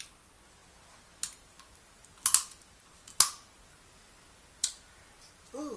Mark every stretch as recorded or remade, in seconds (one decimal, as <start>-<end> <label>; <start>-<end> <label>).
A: 0.0-5.8 recorded